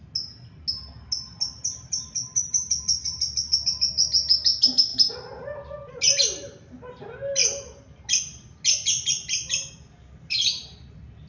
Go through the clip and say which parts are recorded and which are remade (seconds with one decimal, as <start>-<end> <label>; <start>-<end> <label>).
0.0-11.3 recorded